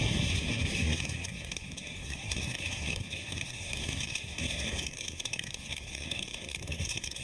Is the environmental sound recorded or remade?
remade